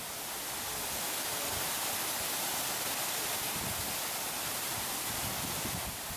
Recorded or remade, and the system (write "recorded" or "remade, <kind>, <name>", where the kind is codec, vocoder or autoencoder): recorded